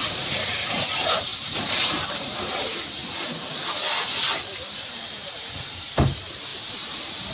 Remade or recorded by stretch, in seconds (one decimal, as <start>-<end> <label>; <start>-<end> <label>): 0.0-3.0 remade; 3.0-4.8 recorded; 4.8-7.3 remade